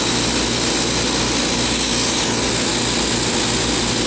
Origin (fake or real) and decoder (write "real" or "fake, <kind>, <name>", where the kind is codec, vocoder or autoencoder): real